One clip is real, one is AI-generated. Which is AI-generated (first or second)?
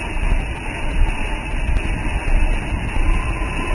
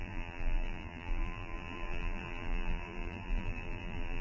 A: second